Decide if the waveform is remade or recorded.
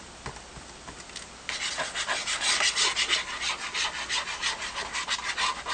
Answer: recorded